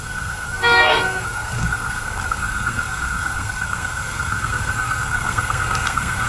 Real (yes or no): no